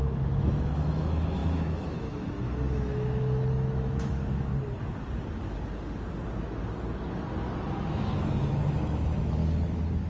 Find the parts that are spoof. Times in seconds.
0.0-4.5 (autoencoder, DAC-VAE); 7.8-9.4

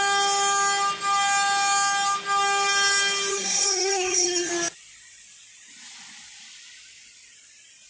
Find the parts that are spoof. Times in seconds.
3.3-4.5 (codec, SNAC)

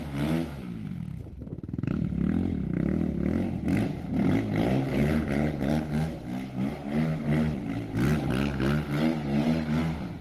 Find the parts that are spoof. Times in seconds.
4.9-5.7 (vocoder, Vocos)